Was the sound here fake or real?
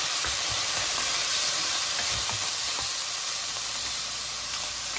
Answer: fake